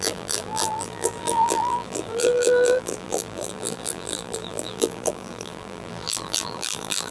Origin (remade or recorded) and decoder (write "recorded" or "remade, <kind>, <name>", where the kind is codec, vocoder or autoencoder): remade, vocoder, BigVGAN v2